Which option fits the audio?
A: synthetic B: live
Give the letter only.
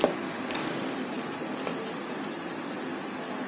B